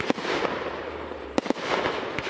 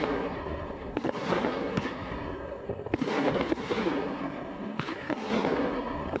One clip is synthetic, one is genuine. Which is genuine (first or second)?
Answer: first